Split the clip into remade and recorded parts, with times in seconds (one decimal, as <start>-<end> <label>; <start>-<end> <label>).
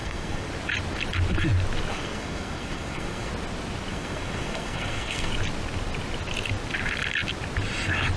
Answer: 0.0-0.5 remade; 0.5-1.9 recorded; 1.9-3.3 remade; 3.3-3.9 recorded; 3.9-5.3 remade; 5.3-8.2 recorded